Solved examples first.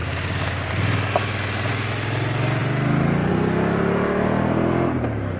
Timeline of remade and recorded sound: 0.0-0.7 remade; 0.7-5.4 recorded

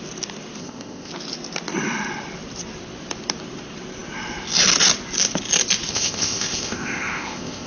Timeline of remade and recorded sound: 0.0-0.6 recorded; 0.6-1.1 remade; 1.1-5.9 recorded; 5.9-7.7 remade

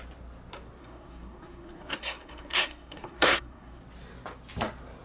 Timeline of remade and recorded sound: 0.0-0.8 recorded; 0.8-3.8 remade; 3.8-5.0 recorded